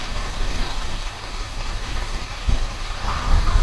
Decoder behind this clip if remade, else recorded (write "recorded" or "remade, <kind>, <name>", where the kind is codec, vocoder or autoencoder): remade, codec, DAC